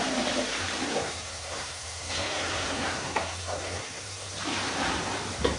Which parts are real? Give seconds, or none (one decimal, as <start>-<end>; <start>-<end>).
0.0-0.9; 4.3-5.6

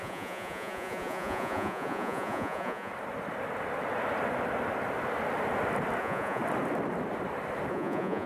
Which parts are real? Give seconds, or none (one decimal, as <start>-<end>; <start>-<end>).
2.9-6.0; 6.4-7.7

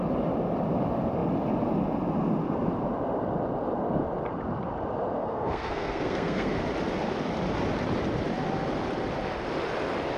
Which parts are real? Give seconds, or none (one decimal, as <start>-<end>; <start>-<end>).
0.0-5.2; 6.5-10.2

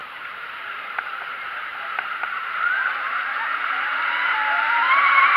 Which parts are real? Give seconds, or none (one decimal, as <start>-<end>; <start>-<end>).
none

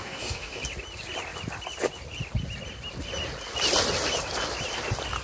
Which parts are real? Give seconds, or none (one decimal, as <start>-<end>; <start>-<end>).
0.6-5.2

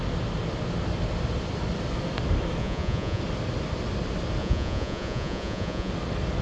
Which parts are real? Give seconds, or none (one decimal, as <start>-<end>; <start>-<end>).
0.0-2.6; 3.2-4.4; 5.9-6.4

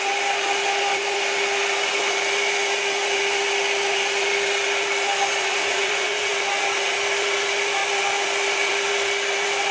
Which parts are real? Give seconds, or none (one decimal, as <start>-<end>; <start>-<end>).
0.0-5.4; 6.3-9.7

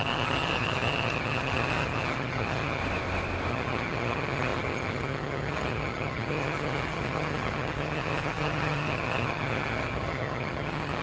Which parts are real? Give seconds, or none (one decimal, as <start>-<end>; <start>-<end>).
2.8-3.5